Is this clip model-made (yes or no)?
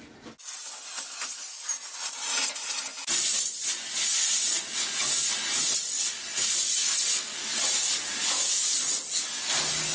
no